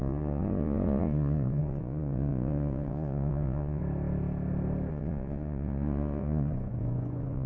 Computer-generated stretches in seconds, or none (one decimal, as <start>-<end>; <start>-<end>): 0.0-3.8; 4.9-7.5